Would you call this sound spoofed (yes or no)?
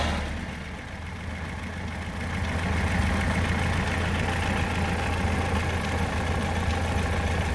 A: no